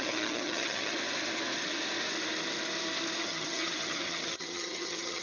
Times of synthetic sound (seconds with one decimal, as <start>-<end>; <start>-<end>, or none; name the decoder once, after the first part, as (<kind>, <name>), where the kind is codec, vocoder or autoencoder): 0.0-0.9 (vocoder, HiFi-GAN); 3.2-5.2